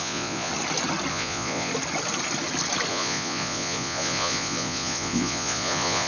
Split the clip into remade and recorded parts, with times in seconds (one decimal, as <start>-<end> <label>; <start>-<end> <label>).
0.0-0.5 remade; 0.5-1.1 recorded; 1.1-1.7 remade; 1.7-2.9 recorded; 2.9-6.1 remade